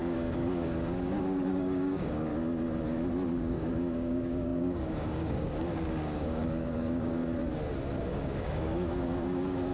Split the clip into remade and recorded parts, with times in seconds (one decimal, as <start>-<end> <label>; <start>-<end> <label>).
0.0-2.3 remade; 2.3-3.3 recorded; 3.3-7.2 remade; 7.2-8.0 recorded; 8.0-9.7 remade